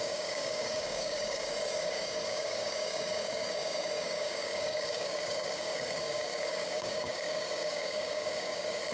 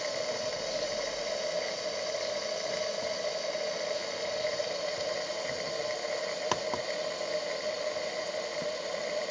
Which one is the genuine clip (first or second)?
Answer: second